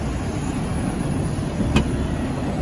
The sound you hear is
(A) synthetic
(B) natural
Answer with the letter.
B